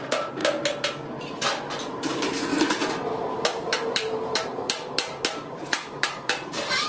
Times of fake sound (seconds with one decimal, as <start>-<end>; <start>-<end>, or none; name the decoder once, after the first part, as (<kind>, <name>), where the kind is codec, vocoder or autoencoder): 0.0-0.4 (vocoder, BigVGAN v2); 1.8-6.9